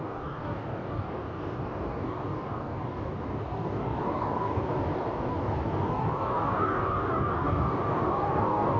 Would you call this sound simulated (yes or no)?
yes